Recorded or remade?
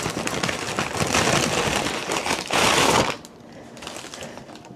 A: recorded